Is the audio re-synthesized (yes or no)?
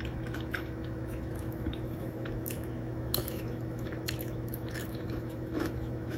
yes